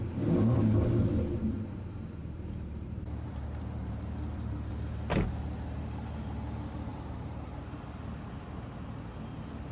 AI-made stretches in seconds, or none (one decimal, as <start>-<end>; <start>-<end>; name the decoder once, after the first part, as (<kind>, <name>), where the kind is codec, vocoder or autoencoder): 2.2-4.7 (vocoder, BigVGAN v2); 6.9-7.6